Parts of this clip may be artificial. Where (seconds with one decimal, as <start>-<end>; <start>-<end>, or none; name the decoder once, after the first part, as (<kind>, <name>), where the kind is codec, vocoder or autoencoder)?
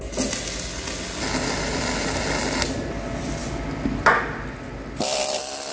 none